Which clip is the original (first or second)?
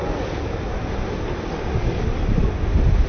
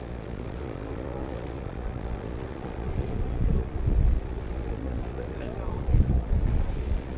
first